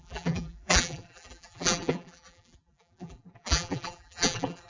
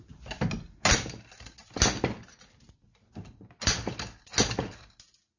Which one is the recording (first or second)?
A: second